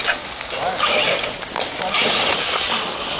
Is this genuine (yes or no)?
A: yes